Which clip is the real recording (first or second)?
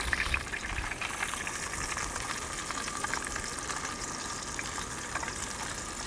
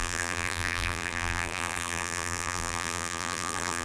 first